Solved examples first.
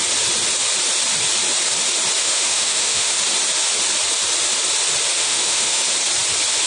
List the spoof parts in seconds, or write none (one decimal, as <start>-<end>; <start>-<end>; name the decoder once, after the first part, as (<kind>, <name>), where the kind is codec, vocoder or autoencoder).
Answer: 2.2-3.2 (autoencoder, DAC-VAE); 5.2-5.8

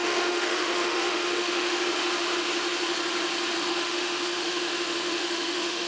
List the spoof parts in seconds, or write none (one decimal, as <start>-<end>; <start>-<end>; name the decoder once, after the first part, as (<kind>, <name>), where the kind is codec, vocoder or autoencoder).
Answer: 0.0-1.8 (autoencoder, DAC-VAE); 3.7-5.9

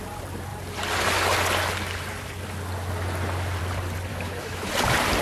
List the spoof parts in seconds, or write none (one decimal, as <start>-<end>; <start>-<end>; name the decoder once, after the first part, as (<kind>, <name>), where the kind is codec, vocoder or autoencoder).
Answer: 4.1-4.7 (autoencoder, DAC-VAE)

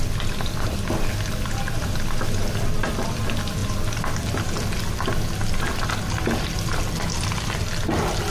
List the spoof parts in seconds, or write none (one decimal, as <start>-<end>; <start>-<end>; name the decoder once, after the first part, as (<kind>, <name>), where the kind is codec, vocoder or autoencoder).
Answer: none

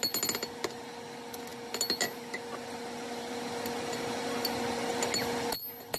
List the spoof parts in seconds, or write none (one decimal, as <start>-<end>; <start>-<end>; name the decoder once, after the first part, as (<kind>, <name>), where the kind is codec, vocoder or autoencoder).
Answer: none

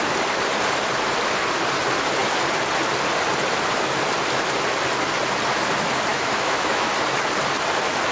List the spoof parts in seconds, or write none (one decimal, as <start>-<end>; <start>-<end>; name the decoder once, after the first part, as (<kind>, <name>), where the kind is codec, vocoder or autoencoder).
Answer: 6.1-6.9 (autoencoder, DAC-VAE)